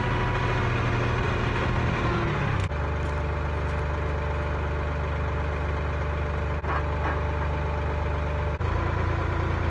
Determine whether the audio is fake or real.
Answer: real